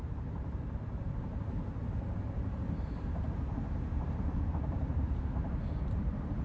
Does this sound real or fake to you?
fake